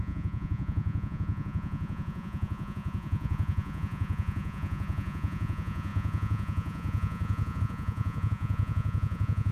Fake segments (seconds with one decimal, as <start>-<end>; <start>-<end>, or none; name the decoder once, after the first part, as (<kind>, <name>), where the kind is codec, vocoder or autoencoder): 0.0-9.5 (vocoder, Vocos)